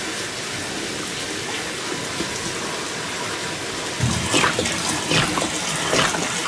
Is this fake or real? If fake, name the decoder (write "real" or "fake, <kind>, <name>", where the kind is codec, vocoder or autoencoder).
real